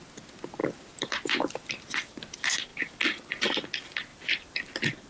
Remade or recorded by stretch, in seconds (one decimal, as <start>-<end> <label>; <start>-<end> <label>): 0.0-0.6 recorded; 0.6-2.2 remade; 2.2-2.7 recorded; 2.7-3.4 remade; 3.4-4.1 recorded; 4.1-5.1 remade